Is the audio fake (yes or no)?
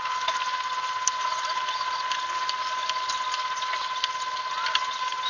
no